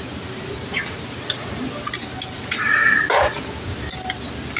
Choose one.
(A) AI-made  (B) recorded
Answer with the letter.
B